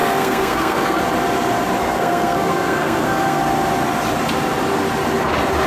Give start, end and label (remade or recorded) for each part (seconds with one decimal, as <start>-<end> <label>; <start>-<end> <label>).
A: 0.0-1.0 remade; 1.0-1.8 recorded; 1.8-3.4 remade; 3.4-5.7 recorded